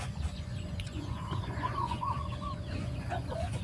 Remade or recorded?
remade